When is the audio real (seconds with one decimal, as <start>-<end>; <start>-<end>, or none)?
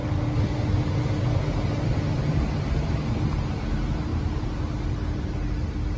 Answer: 0.0-4.1; 4.8-6.0